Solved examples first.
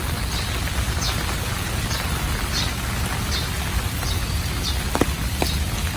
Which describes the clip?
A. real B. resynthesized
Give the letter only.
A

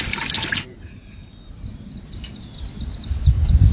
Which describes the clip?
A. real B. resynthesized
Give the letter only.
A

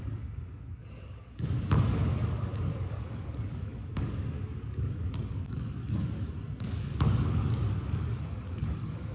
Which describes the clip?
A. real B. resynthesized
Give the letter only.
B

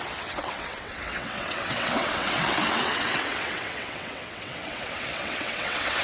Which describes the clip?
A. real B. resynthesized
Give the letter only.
B